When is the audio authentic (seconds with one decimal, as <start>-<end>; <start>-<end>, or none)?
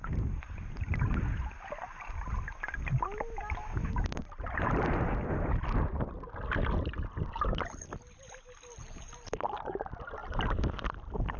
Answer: 0.0-8.8; 9.3-11.4